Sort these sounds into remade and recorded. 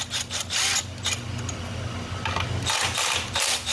recorded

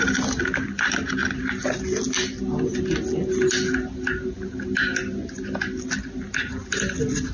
recorded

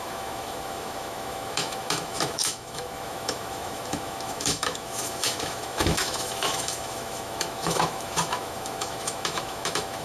remade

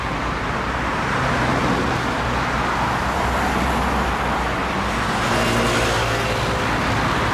recorded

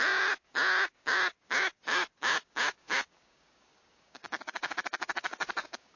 remade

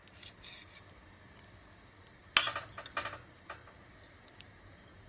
recorded